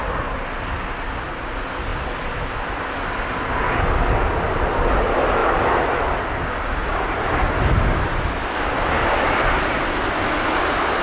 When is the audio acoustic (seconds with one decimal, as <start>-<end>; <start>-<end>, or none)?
0.0-11.0